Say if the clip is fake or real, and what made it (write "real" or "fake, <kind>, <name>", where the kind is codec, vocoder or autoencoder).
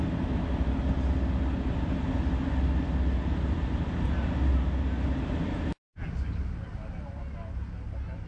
real